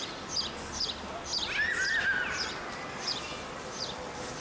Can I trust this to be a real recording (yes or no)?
yes